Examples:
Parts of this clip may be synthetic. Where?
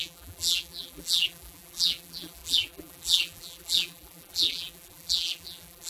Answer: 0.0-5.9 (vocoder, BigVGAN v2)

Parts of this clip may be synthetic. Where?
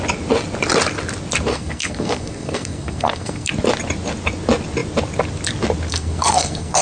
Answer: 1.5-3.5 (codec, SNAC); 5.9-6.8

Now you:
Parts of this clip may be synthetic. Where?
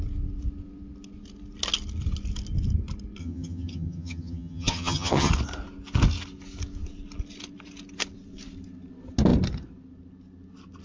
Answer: 3.2-5.3 (vocoder, HiFi-GAN)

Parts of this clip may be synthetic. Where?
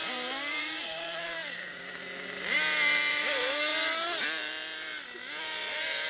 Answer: 0.0-1.4 (vocoder, BigVGAN v2); 3.1-3.7; 5.4-6.1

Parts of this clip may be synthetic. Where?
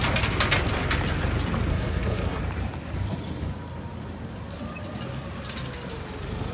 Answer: 1.7-2.4 (codec, SNAC)